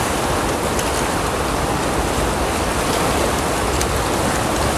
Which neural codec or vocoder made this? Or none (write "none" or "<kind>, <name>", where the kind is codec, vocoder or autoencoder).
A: none